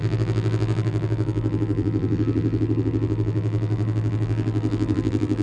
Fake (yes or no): yes